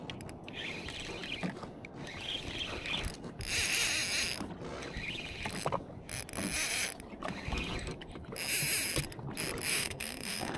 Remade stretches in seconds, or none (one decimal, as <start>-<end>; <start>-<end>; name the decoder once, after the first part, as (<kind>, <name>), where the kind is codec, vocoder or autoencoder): 9.7-10.6 (autoencoder, DAC-VAE)